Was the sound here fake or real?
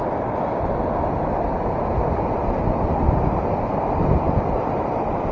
real